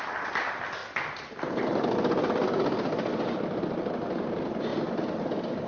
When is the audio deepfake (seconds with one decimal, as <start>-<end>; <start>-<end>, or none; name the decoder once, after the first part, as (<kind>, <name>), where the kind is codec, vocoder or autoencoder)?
none